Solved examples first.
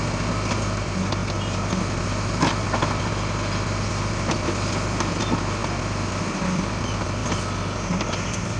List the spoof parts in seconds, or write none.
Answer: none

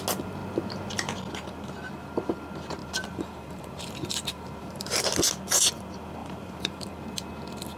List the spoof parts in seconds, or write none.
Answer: 2.8-5.0 (vocoder, BigVGAN v2); 6.2-6.9

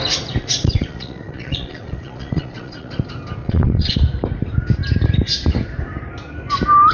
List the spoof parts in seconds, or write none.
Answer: 0.4-2.9 (vocoder, Vocos); 3.4-3.9